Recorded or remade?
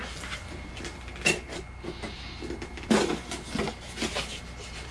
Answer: recorded